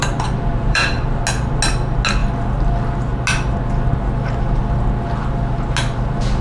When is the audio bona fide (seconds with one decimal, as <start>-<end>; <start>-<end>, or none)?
1.2-6.4